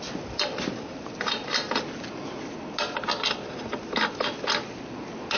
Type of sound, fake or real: real